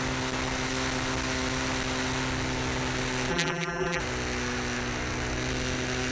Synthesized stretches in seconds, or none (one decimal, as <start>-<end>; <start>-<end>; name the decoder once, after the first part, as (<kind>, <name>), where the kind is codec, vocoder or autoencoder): 3.3-4.0 (vocoder, BigVGAN v2)